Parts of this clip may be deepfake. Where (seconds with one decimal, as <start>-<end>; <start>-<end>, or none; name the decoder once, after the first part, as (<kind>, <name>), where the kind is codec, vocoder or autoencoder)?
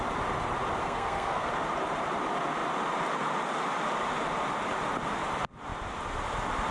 0.8-1.5 (codec, SNAC)